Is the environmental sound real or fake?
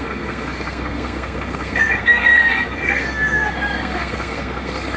fake